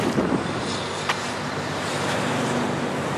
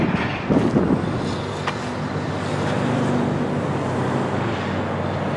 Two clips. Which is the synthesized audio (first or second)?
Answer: first